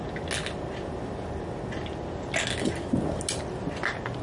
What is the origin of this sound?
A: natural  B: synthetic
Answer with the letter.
A